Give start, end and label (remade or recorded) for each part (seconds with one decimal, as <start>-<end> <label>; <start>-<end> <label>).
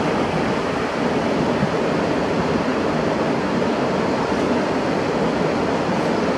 0.0-6.4 recorded